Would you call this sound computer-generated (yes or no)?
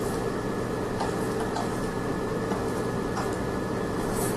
no